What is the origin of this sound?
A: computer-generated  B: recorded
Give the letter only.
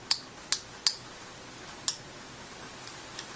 B